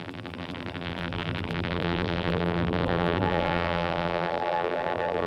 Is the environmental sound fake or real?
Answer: fake